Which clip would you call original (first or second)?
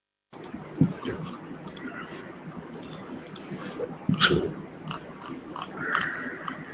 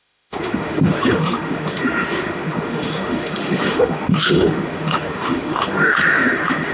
first